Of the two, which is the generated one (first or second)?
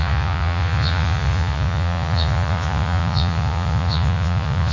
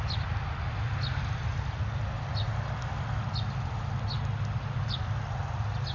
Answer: first